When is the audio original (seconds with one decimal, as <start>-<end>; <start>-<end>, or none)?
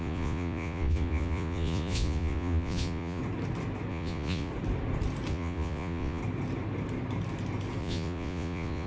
3.2-3.9; 4.5-5.3; 6.2-7.8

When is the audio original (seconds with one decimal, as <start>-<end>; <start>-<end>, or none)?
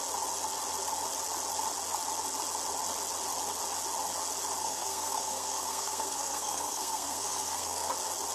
0.0-4.6; 7.9-8.3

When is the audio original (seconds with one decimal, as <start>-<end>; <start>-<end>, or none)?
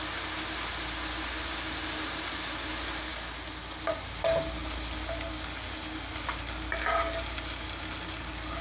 0.0-8.6